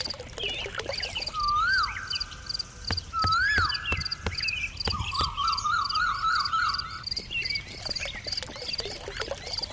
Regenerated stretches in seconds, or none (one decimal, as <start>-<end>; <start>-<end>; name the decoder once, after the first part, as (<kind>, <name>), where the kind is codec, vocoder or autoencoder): none